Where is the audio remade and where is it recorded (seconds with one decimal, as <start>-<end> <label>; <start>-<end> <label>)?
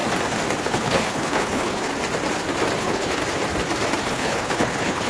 0.0-0.6 recorded; 0.6-1.9 remade; 1.9-2.8 recorded; 2.8-3.2 remade; 3.2-4.1 recorded; 4.1-5.1 remade